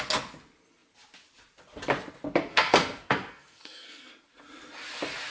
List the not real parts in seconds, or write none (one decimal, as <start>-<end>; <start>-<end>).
2.5-4.1